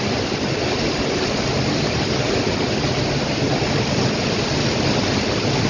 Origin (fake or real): real